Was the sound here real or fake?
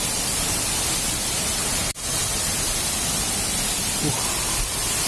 fake